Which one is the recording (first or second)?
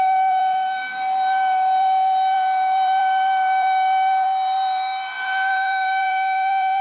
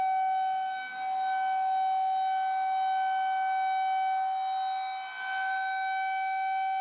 second